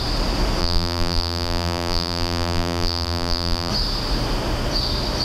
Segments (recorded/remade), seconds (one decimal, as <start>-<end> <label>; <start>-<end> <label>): 0.0-0.6 recorded; 0.6-3.7 remade; 3.7-5.2 recorded